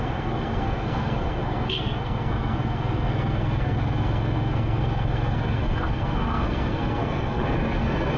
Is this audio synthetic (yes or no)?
yes